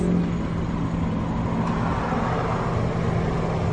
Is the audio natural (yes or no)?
yes